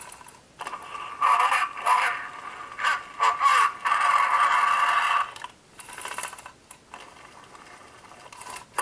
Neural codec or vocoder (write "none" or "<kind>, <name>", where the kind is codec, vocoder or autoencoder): none